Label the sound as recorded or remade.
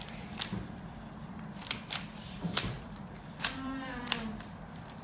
remade